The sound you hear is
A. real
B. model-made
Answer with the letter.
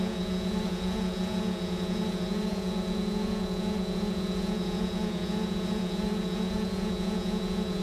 B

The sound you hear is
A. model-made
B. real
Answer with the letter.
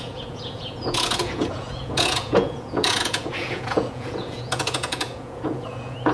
A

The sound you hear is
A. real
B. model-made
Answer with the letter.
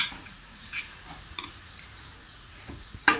B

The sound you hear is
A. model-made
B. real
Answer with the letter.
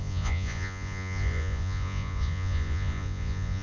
A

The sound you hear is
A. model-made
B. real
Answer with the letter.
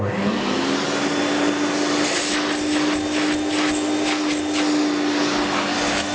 B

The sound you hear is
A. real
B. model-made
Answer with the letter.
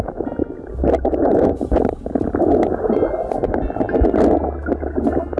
A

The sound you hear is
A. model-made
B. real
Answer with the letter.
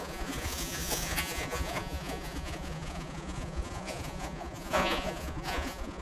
A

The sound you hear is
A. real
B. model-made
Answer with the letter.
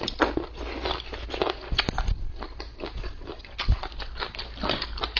A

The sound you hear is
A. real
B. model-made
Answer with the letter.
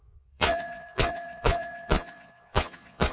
B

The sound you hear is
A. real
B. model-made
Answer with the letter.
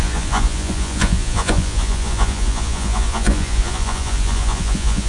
B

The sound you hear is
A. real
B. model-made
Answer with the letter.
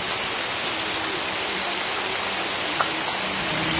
A